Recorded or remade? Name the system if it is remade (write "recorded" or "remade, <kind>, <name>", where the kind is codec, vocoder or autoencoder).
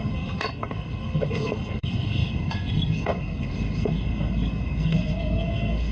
remade, codec, SNAC